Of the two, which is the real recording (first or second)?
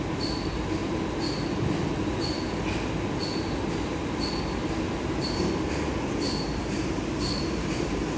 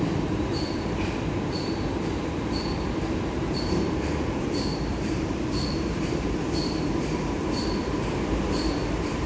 first